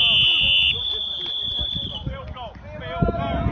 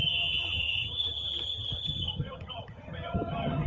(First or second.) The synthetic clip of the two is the second